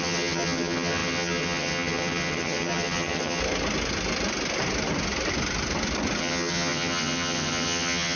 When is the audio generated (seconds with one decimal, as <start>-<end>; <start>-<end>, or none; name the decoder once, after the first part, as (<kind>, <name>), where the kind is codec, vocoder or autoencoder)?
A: 0.0-3.4 (vocoder, HiFi-GAN); 6.2-8.2